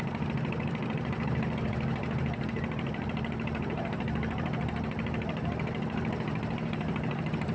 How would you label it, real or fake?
fake